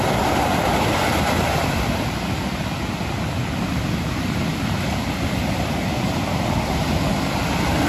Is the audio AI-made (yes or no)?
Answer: no